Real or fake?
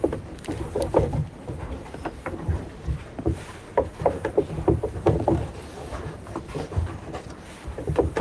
fake